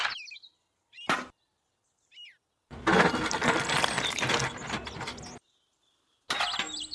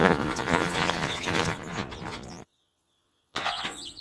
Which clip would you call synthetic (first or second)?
second